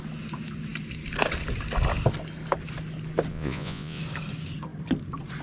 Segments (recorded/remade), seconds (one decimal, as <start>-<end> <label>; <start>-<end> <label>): 0.0-3.3 recorded; 3.3-4.0 remade; 4.0-5.4 recorded